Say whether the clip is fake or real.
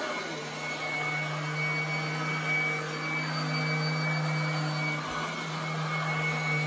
real